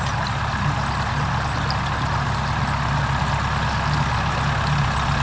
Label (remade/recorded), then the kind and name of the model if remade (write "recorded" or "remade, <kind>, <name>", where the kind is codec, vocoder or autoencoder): recorded